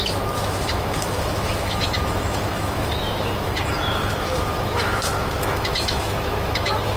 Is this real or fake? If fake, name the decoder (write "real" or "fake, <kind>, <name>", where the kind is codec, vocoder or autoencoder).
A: fake, autoencoder, DAC-VAE